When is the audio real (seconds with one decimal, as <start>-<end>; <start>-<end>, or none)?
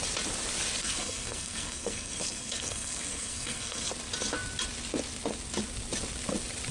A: 0.0-0.8; 3.9-6.7